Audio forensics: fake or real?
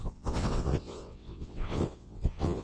fake